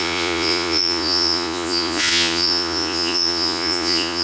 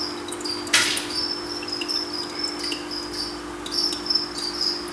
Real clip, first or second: second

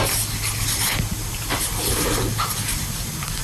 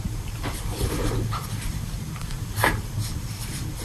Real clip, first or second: first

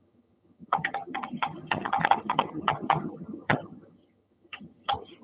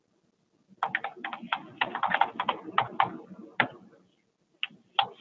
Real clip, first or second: second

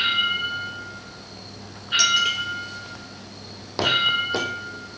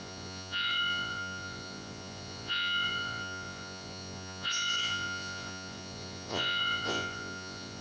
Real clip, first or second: first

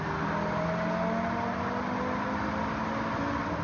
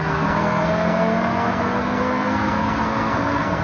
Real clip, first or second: first